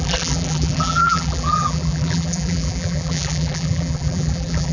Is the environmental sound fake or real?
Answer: fake